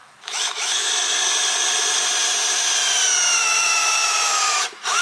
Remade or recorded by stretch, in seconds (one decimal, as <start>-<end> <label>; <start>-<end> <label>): 0.0-0.9 remade; 0.9-3.4 recorded; 3.4-5.0 remade